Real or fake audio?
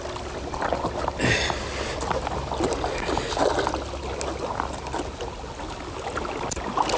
real